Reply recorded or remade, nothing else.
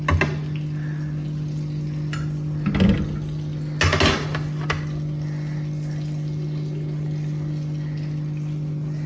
recorded